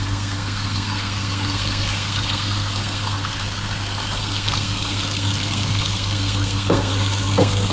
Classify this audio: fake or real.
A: fake